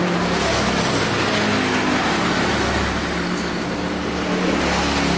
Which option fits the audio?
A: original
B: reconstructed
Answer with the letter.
A